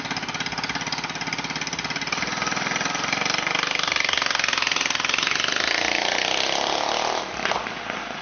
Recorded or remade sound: recorded